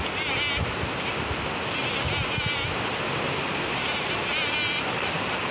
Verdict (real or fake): real